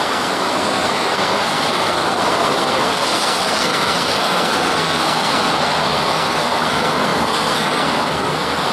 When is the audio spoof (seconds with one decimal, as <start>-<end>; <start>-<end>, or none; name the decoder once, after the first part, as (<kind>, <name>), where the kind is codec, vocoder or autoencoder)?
0.0-8.7 (codec, SNAC)